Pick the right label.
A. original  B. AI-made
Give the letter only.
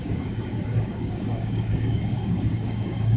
B